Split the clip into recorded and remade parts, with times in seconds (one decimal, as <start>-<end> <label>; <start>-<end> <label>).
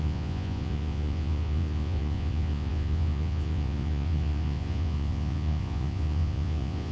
0.0-6.9 remade